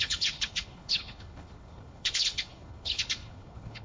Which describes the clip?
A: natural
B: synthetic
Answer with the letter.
B